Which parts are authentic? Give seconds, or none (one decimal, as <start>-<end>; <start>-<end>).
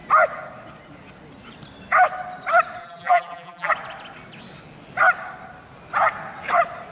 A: 0.0-2.8; 3.7-6.9